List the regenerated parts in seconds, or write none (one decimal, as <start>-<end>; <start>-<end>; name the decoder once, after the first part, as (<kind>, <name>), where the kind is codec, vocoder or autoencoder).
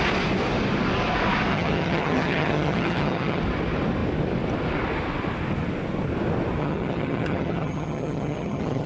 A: 1.5-3.4 (vocoder, HiFi-GAN); 6.6-8.9